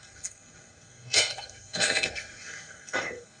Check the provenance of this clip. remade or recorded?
remade